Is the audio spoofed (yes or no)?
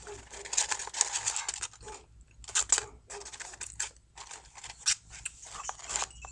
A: no